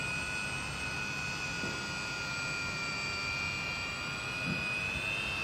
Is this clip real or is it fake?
real